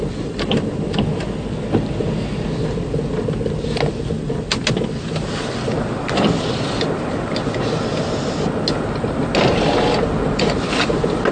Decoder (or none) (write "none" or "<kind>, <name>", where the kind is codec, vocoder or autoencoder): none